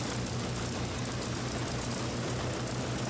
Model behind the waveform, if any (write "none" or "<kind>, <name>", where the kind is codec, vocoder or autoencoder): none